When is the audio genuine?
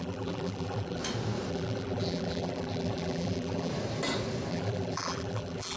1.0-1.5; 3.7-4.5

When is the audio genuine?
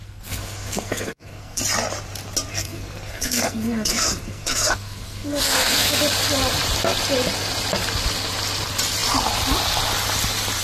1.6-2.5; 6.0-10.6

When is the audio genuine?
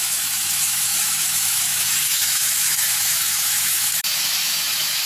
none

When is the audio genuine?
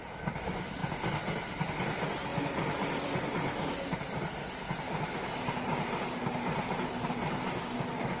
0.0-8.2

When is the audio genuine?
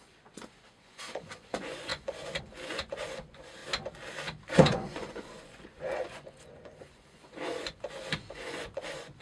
3.6-4.5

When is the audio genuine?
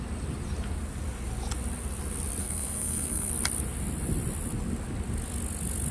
0.0-2.4; 3.3-5.9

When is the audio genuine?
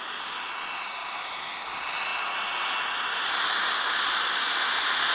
0.0-5.1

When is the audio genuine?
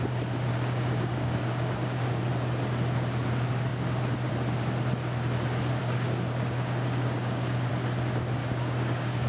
0.0-0.5; 2.3-5.8; 7.7-8.4